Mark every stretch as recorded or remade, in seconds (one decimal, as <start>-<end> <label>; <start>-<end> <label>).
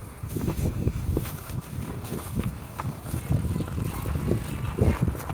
0.0-3.2 remade; 3.2-5.3 recorded